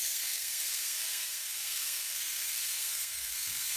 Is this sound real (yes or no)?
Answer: no